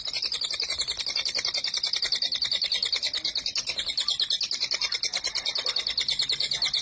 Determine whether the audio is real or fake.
real